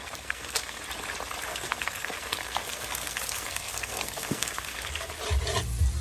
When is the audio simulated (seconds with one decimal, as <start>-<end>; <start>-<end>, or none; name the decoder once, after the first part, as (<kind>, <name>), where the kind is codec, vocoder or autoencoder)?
0.0-0.8 (codec, SNAC); 1.5-5.1